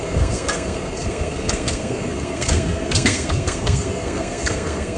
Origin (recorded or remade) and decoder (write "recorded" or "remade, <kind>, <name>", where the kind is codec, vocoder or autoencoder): remade, codec, SNAC